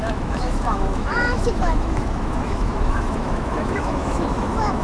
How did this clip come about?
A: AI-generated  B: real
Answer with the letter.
A